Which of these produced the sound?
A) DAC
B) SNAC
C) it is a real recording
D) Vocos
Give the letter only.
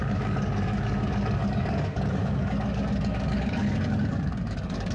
A